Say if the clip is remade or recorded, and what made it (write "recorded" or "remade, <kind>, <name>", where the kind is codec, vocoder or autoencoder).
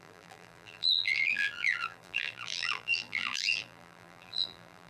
remade, vocoder, BigVGAN v2